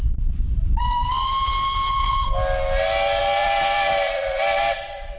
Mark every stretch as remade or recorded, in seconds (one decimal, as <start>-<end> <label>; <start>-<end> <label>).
0.0-1.1 remade; 1.1-3.2 recorded; 3.2-5.2 remade